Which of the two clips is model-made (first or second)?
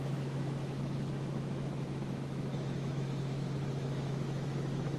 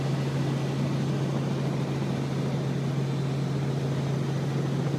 first